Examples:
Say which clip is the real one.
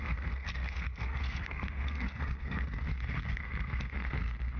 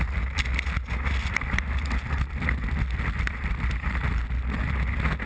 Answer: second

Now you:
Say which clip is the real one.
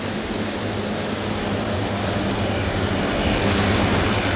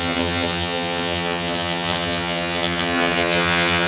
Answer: first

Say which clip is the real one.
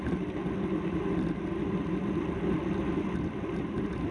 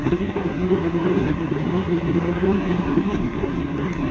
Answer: first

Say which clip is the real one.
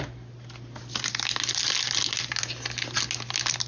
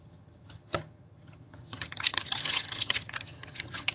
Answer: first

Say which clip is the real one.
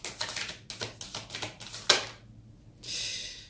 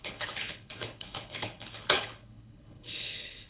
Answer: first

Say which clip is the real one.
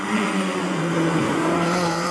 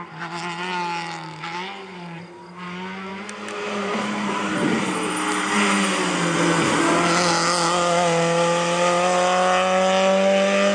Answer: second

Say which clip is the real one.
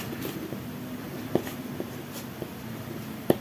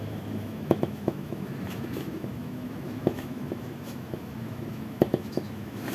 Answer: first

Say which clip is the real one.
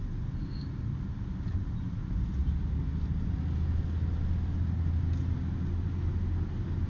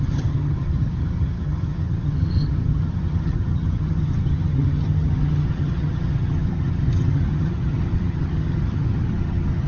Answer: first